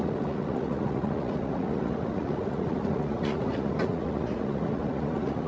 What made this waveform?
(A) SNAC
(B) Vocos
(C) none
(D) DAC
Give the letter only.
B